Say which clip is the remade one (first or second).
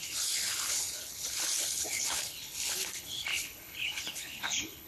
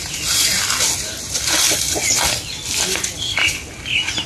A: first